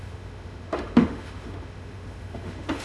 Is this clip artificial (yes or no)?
yes